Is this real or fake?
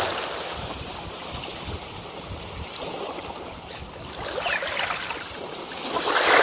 real